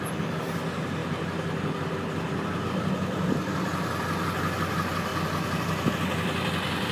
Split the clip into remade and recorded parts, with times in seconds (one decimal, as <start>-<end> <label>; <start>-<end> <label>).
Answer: 0.0-1.0 recorded; 1.0-2.6 remade; 2.6-5.1 recorded; 5.1-5.9 remade; 5.9-6.9 recorded